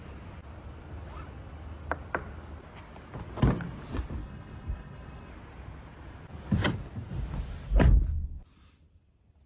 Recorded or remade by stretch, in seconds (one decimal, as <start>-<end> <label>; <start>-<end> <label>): 0.0-4.2 recorded; 4.2-5.3 remade; 5.3-9.5 recorded